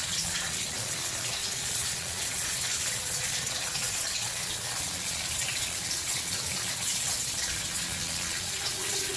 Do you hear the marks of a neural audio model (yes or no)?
yes